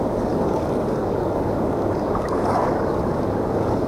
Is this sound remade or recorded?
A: remade